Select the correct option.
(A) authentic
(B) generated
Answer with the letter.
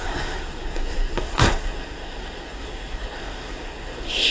B